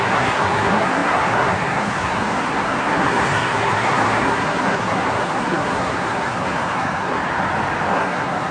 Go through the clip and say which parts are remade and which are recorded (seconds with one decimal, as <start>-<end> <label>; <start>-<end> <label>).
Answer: 0.0-7.2 remade; 7.2-7.9 recorded; 7.9-8.5 remade